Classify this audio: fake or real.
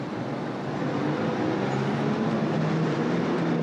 real